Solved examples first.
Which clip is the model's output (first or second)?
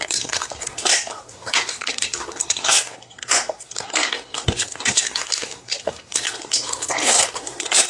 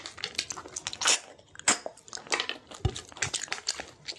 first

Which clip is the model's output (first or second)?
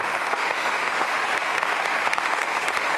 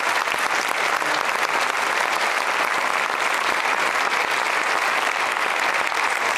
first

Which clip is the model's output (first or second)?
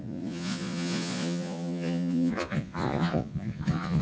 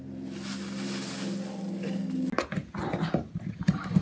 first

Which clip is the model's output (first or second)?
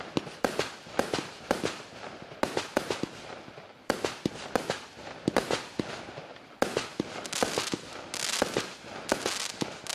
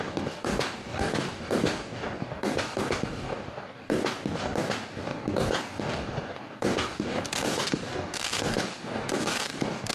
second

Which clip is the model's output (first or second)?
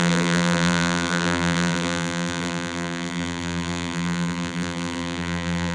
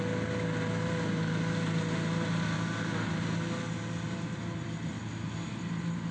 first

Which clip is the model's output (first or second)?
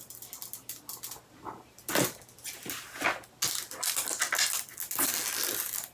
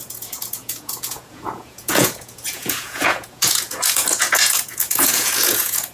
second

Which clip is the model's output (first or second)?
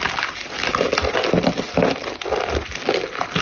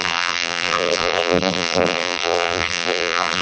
second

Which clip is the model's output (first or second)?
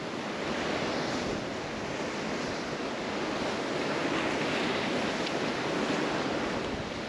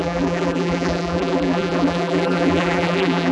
second